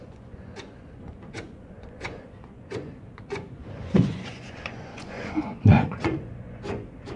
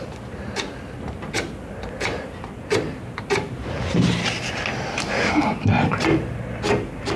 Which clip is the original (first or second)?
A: second